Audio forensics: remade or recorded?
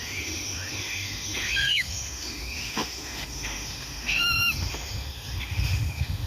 remade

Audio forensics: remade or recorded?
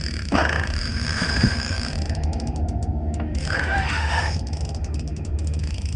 remade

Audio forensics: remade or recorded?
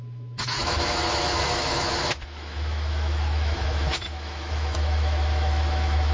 remade